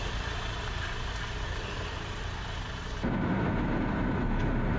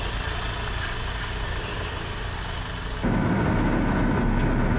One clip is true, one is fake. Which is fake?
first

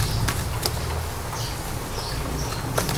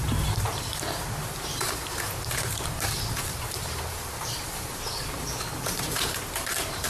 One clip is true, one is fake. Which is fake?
second